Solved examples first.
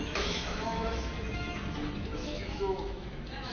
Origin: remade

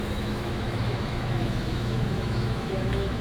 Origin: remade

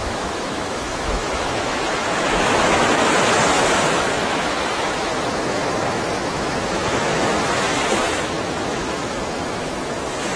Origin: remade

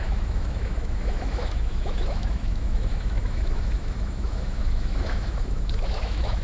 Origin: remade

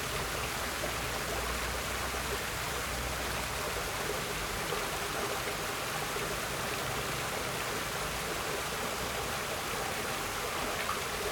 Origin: recorded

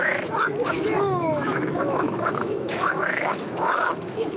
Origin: remade